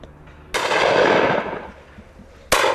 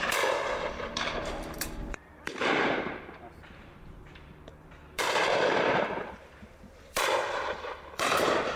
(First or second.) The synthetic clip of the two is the second